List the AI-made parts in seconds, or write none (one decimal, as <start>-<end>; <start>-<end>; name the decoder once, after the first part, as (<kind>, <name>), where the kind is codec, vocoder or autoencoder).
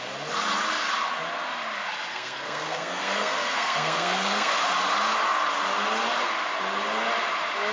2.1-4.5 (codec, SNAC)